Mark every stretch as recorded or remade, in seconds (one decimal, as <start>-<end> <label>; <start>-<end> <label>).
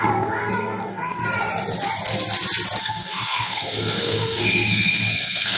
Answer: 0.0-1.2 remade; 1.2-2.8 recorded; 2.8-5.6 remade